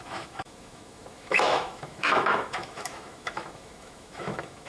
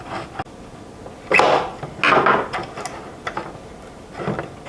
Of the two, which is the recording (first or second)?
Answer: second